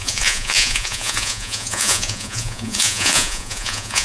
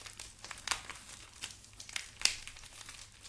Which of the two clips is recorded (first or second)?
second